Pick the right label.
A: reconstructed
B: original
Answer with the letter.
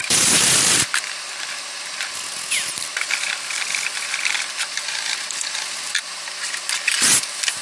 B